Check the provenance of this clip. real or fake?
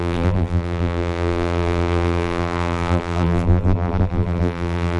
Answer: fake